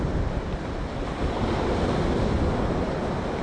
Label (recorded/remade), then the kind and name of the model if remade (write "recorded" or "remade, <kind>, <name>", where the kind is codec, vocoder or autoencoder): recorded